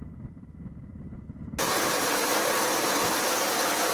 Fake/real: real